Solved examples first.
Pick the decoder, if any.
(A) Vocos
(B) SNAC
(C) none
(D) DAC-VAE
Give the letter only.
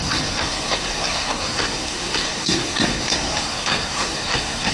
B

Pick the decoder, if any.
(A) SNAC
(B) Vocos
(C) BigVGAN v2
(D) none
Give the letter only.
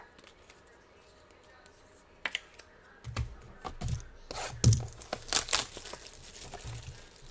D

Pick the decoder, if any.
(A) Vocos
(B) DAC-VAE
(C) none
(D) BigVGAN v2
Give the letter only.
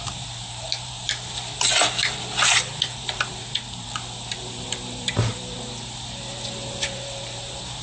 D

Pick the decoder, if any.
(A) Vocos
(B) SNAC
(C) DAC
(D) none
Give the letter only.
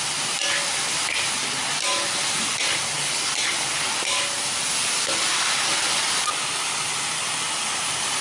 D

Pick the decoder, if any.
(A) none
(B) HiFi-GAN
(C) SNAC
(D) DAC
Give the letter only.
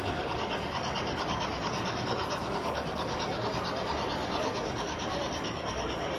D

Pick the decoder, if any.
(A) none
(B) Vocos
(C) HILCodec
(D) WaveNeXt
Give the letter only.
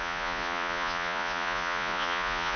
B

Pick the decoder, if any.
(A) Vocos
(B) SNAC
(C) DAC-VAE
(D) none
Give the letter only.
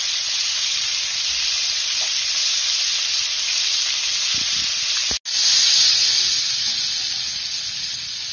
D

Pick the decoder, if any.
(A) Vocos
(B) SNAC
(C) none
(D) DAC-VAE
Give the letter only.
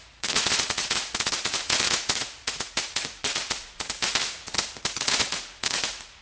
A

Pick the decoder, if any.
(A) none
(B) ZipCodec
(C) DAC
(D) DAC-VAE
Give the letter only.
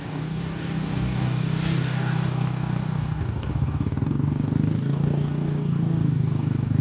C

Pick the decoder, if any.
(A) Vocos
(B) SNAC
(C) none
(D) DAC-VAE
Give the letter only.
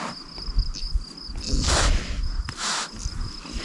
C